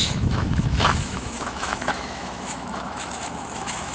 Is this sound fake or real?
fake